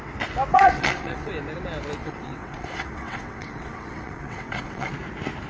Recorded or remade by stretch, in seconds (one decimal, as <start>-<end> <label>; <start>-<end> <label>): 0.0-0.5 recorded; 0.5-1.3 remade; 1.3-2.0 recorded; 2.0-4.9 remade; 4.9-5.5 recorded